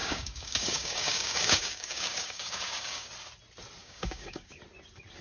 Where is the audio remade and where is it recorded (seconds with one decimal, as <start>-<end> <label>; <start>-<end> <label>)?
0.0-3.1 remade; 3.1-3.8 recorded; 3.8-4.6 remade; 4.6-5.2 recorded